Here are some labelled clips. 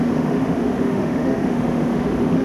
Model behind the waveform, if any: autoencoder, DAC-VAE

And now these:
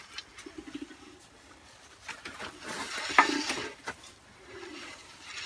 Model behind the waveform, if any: none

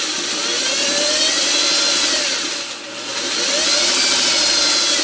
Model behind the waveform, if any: none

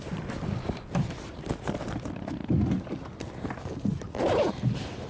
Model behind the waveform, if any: vocoder, BigVGAN v2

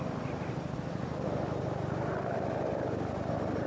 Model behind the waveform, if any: vocoder, BigVGAN v2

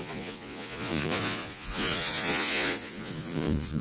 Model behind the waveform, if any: vocoder, Vocos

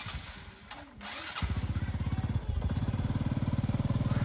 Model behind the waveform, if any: none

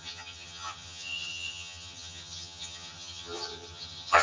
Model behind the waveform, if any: vocoder, HiFi-GAN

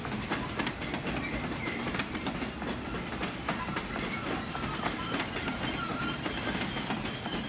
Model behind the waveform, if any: none